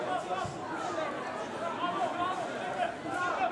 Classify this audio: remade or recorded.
recorded